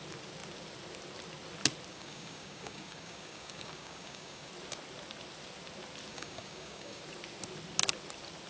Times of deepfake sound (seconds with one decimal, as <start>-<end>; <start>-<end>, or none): 1.9-4.5; 6.1-7.0